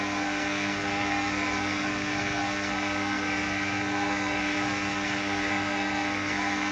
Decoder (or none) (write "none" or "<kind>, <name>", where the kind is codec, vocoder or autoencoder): codec, SNAC